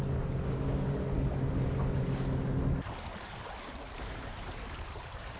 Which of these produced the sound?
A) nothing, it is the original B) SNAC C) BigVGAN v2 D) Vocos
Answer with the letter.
A